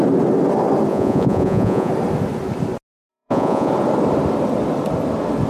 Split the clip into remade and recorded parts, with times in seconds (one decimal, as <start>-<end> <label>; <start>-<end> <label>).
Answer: 0.0-0.9 recorded; 0.9-1.9 remade; 1.9-3.1 recorded; 3.1-3.7 remade; 3.7-5.5 recorded